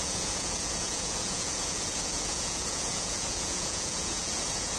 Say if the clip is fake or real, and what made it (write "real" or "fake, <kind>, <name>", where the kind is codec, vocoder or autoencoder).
fake, vocoder, Vocos